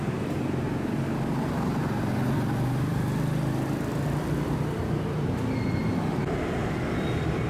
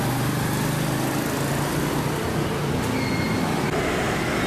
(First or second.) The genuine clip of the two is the second